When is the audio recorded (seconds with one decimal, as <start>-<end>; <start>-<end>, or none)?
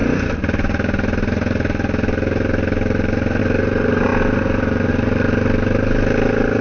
0.0-6.6